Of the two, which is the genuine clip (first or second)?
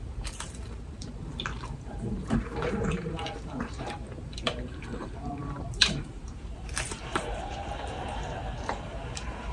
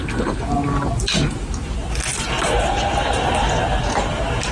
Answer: second